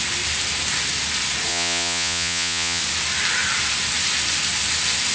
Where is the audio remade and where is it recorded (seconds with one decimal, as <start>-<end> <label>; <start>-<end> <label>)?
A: 0.0-1.5 recorded; 1.5-2.8 remade; 2.8-5.1 recorded